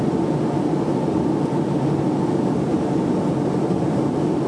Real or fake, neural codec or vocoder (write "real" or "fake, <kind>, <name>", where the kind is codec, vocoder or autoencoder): real